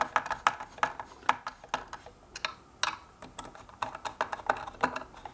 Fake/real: real